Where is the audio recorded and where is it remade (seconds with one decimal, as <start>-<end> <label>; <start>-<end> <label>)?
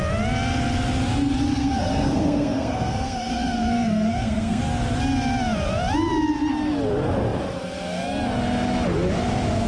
0.0-1.5 recorded; 1.5-4.6 remade; 4.6-9.7 recorded